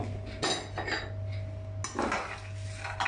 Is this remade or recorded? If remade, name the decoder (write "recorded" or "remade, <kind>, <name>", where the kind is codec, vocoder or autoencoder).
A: recorded